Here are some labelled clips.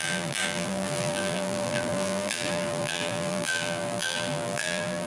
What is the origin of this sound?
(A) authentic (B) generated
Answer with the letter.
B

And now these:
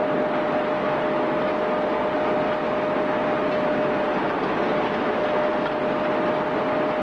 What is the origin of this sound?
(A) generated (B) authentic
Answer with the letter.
B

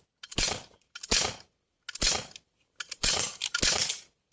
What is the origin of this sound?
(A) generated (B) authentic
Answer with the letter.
B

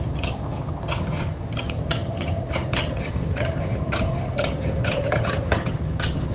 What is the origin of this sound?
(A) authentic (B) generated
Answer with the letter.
B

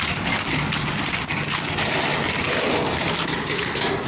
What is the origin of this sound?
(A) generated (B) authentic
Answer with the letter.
B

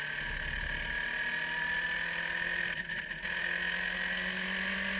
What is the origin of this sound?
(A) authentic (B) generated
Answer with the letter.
A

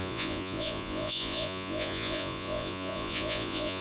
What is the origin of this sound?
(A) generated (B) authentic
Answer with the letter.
A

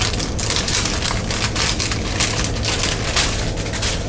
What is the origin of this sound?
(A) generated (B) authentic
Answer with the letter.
B